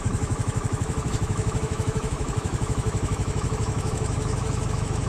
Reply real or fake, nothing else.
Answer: fake